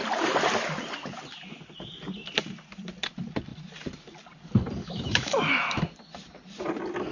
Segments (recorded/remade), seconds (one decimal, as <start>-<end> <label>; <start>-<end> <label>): 0.0-4.8 recorded; 4.8-5.8 remade; 5.8-7.1 recorded